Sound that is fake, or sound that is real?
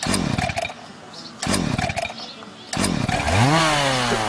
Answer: real